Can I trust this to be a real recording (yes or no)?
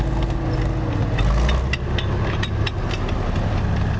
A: yes